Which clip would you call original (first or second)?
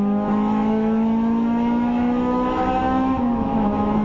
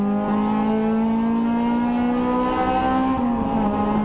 second